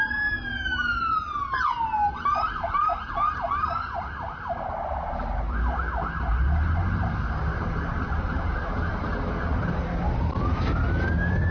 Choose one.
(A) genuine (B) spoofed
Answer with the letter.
A